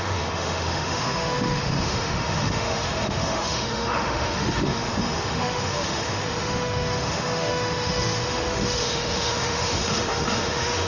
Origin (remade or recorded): remade